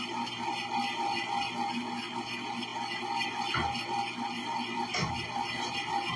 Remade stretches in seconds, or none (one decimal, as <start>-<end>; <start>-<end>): none